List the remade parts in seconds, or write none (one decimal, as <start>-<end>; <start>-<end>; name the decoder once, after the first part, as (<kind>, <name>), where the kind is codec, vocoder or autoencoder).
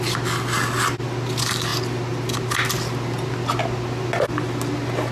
none